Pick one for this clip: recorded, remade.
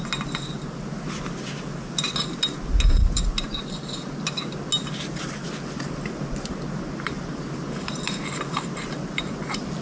recorded